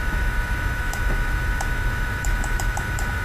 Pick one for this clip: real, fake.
fake